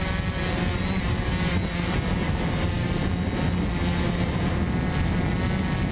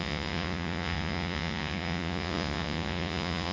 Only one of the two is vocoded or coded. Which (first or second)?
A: second